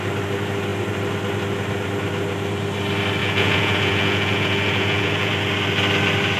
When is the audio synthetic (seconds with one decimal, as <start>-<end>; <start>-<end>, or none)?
3.2-5.3